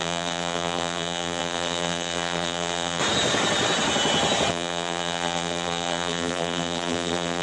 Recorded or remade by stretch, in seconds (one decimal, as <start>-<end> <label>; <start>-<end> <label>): 0.0-3.0 remade; 3.0-4.5 recorded; 4.5-7.4 remade

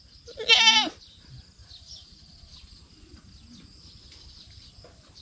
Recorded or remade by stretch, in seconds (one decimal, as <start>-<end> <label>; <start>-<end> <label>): 0.0-5.2 recorded

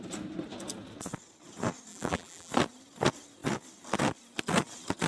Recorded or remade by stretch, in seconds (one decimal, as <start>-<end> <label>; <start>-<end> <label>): 0.0-1.9 recorded; 1.9-2.5 remade; 2.5-5.1 recorded

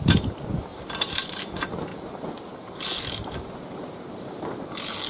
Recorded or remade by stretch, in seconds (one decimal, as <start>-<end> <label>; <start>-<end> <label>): 0.0-0.7 recorded; 0.7-1.4 remade; 1.4-1.9 recorded; 1.9-4.6 remade; 4.6-5.1 recorded